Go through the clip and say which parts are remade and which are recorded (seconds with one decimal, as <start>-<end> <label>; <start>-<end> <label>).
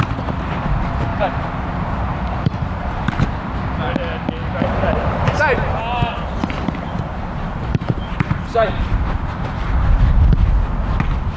0.0-1.1 recorded; 1.1-3.0 remade; 3.0-4.4 recorded; 4.4-5.4 remade; 5.4-7.1 recorded; 7.1-10.1 remade; 10.1-11.4 recorded